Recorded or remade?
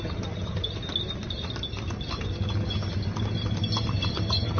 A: recorded